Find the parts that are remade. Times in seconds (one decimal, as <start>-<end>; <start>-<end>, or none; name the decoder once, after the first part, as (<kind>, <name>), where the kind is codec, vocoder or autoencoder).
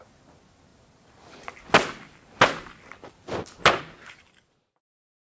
none